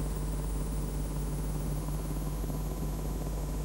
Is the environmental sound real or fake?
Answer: fake